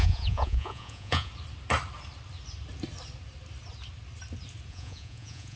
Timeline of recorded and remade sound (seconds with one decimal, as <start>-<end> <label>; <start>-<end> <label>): 0.0-1.3 remade; 1.3-4.7 recorded; 4.7-5.6 remade